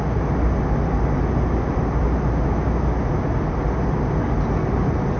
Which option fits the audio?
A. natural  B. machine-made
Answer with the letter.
A